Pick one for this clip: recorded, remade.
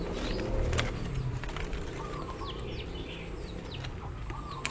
recorded